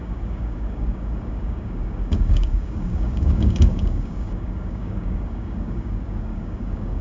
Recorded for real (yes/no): no